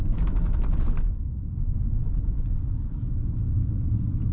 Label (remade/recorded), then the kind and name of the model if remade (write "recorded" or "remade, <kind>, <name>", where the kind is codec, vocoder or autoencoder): recorded